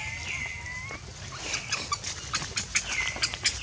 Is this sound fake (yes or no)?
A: no